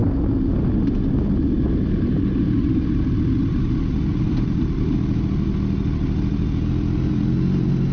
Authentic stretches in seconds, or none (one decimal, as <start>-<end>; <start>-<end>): 0.0-7.9